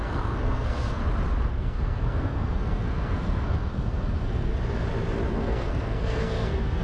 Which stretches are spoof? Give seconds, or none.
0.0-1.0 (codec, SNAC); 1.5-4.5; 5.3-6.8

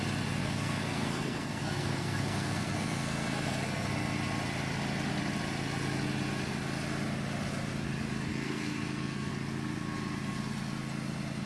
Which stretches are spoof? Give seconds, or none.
0.4-3.9 (codec, SNAC); 8.3-9.3

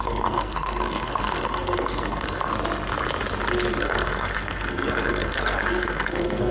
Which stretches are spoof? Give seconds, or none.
0.0-2.5 (codec, SNAC); 3.8-6.5

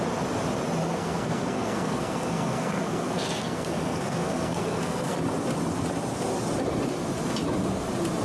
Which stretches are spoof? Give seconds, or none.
0.8-5.2 (codec, SNAC)

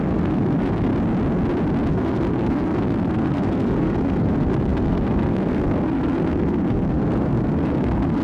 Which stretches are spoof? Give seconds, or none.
0.0-0.9 (codec, SNAC); 1.9-8.2

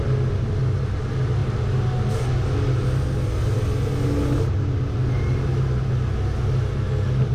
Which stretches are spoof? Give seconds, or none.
none